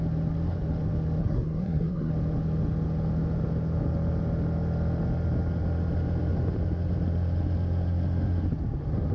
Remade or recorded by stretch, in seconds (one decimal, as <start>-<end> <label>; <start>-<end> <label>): 0.0-1.2 recorded; 1.2-2.1 remade; 2.1-9.1 recorded